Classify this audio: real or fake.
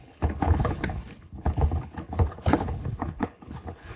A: fake